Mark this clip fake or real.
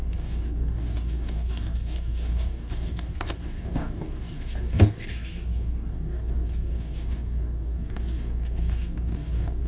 fake